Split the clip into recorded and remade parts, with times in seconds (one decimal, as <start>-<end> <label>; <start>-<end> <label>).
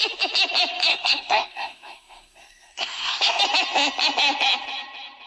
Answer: 0.0-0.9 recorded; 0.9-3.4 remade; 3.4-5.3 recorded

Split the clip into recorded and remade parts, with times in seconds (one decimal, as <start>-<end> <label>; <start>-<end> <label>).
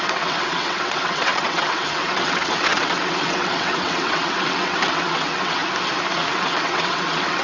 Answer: 0.0-5.6 remade; 5.6-6.3 recorded; 6.3-7.4 remade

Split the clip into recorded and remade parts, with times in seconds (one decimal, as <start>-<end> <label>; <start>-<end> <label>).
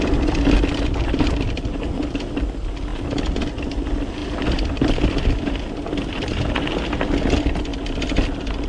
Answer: 0.0-1.7 recorded; 1.7-2.4 remade; 2.4-4.2 recorded; 4.2-5.1 remade; 5.1-8.7 recorded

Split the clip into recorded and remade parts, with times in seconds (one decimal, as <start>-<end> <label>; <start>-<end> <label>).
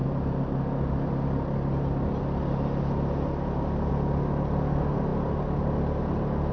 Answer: 0.0-6.5 recorded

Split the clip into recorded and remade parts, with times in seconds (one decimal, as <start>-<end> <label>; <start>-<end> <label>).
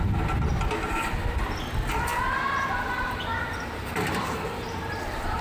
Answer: 0.0-2.1 recorded; 2.1-5.4 remade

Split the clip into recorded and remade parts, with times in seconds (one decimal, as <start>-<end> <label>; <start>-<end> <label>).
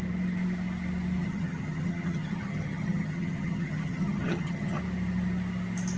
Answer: 0.0-1.2 recorded; 1.2-4.8 remade; 4.8-6.0 recorded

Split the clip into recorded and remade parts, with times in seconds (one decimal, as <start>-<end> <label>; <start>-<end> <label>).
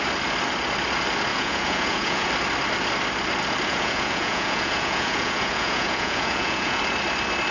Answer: 0.0-1.3 recorded; 1.3-2.3 remade; 2.3-3.7 recorded; 3.7-6.8 remade; 6.8-7.5 recorded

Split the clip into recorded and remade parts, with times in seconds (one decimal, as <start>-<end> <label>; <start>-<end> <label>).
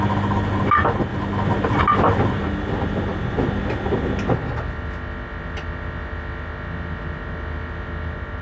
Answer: 0.0-8.4 recorded